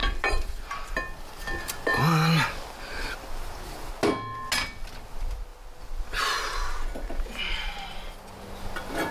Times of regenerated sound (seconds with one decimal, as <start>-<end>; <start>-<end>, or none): 0.0-0.5